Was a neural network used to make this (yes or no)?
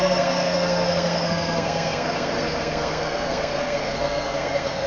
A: yes